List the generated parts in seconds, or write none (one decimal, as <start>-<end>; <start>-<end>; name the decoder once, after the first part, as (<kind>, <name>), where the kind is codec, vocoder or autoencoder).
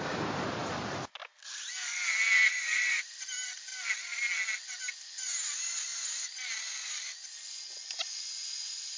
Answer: 0.0-1.2 (vocoder, BigVGAN v2); 1.7-3.7; 8.2-9.0